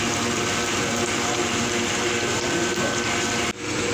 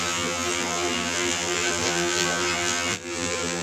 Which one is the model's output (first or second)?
second